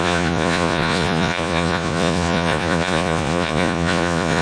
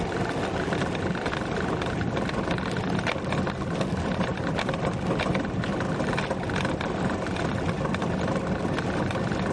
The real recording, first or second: second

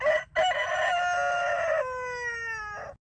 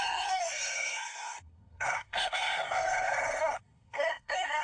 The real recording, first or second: first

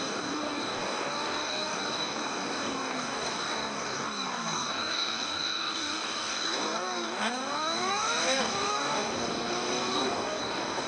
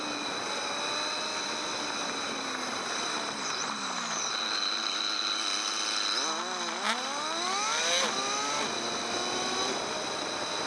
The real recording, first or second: second